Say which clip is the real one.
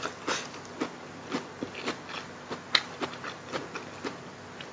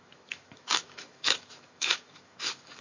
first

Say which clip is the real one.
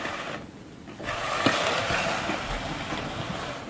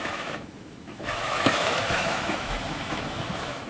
first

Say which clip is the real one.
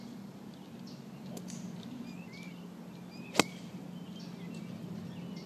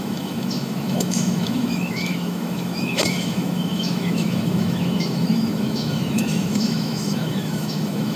first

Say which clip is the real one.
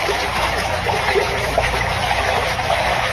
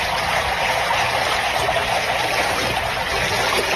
second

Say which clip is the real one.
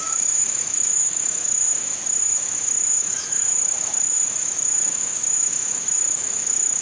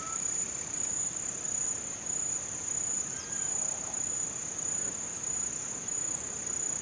second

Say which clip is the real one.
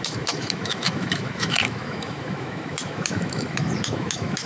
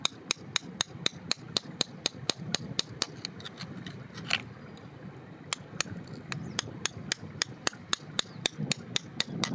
second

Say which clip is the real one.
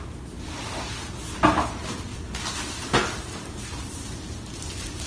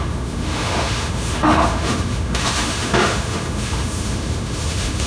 first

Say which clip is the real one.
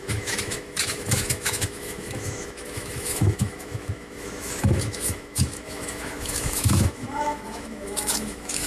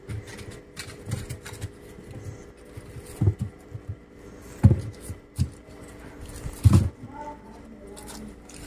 second